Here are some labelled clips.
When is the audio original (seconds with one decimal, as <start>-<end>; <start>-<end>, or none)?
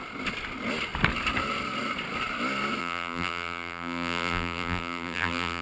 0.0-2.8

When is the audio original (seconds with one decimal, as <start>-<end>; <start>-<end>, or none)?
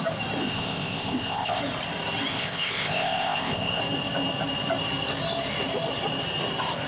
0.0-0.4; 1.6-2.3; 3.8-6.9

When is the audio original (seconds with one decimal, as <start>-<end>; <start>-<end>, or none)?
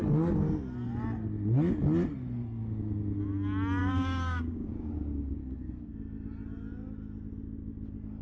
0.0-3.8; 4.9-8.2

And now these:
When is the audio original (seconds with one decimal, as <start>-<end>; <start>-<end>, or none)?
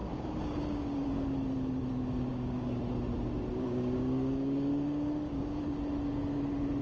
1.1-2.3; 2.8-3.5; 5.6-6.8